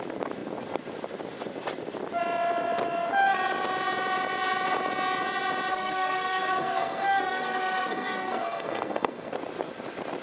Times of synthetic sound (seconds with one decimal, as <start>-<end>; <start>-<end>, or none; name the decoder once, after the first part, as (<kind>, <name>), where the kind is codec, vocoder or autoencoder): 5.7-9.3 (codec, SNAC)